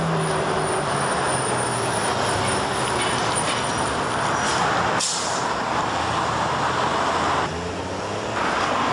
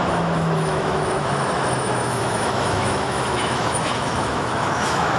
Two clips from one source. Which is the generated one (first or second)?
second